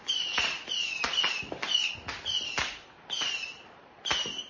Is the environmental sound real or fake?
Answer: fake